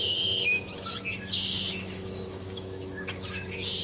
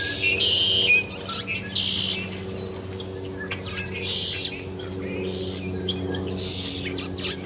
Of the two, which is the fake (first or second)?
first